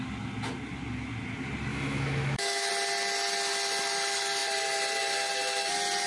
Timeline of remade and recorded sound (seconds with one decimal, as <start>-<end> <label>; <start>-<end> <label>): 0.0-1.7 recorded; 1.7-2.7 remade; 2.7-6.1 recorded